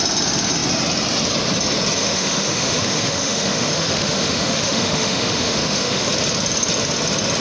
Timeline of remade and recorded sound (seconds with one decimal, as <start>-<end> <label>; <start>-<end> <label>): 0.0-2.0 recorded; 2.0-6.1 remade; 6.1-7.4 recorded